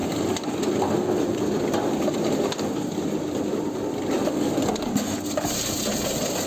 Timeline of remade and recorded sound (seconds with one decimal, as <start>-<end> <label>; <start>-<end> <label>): 0.0-6.5 recorded